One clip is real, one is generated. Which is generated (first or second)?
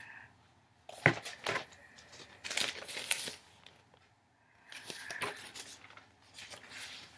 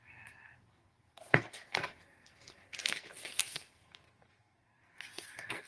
second